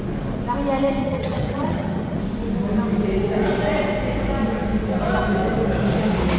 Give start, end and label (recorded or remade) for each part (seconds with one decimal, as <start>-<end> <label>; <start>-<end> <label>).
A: 0.0-1.0 recorded; 1.0-2.2 remade; 2.2-6.4 recorded